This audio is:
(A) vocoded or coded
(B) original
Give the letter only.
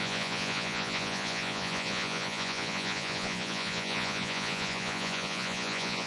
A